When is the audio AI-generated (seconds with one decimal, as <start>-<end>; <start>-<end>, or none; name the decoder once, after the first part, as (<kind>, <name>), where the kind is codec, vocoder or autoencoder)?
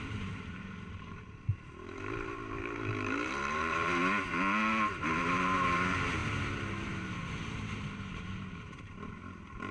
0.0-4.0 (vocoder, BigVGAN v2); 4.9-9.7